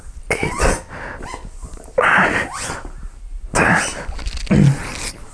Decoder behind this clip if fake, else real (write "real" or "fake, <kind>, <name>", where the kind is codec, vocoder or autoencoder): real